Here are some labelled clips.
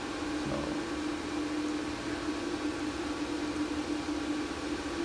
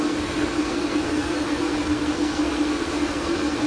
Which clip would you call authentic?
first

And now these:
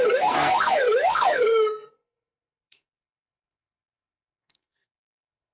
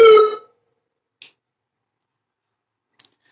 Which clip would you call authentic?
second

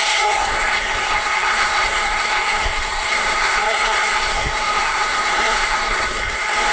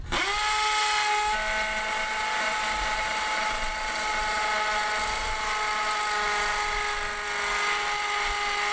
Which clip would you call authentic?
second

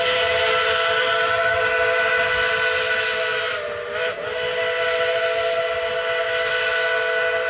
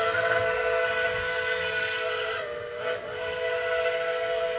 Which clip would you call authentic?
first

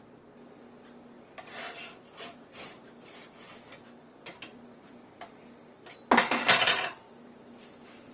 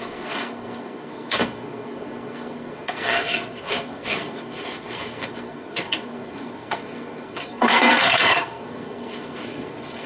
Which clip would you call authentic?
first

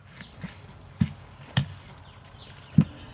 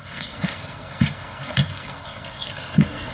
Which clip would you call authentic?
first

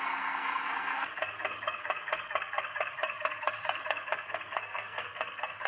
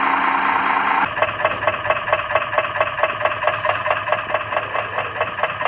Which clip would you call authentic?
second